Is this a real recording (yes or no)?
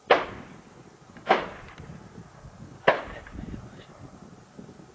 yes